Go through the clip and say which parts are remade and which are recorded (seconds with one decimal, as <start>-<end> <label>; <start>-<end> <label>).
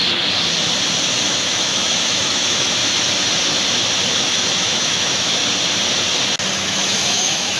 0.0-1.3 recorded; 1.3-2.8 remade; 2.8-4.0 recorded; 4.0-5.4 remade; 5.4-6.5 recorded; 6.5-7.6 remade